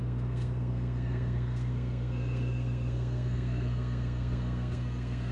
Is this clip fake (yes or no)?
yes